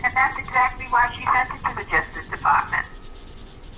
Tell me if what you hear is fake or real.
fake